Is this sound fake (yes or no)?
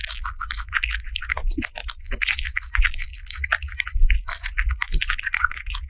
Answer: no